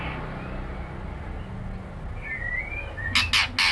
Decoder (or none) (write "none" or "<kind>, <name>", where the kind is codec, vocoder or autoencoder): none